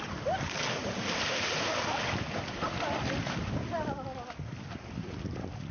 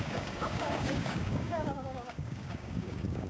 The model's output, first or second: second